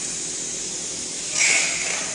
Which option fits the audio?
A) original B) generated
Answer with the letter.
A